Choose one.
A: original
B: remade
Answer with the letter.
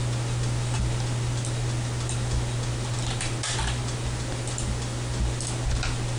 A